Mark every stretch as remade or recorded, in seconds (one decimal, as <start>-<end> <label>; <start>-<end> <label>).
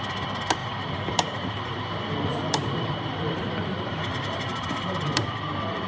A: 0.0-0.6 recorded; 0.6-1.8 remade; 1.8-2.3 recorded; 2.3-5.4 remade; 5.4-5.9 recorded